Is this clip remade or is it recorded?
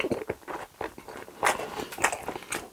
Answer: recorded